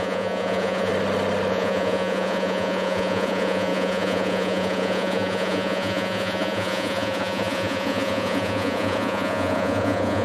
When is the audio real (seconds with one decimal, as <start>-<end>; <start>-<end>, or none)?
0.9-1.5